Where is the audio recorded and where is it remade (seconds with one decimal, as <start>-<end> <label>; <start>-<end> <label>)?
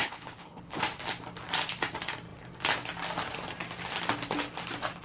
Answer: 0.0-0.8 remade; 0.8-5.0 recorded